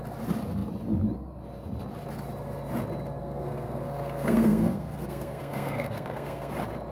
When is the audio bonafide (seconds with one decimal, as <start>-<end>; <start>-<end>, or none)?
0.0-3.2; 6.5-6.9